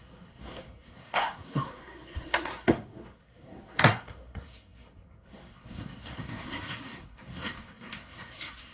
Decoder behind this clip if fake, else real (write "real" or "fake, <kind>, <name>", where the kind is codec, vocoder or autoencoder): fake, codec, SNAC